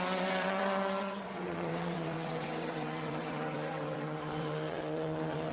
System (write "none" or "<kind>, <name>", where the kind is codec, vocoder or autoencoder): vocoder, WaveNeXt